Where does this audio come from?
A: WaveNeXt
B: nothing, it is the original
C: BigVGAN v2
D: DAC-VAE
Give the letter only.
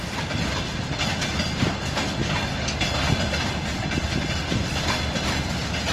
B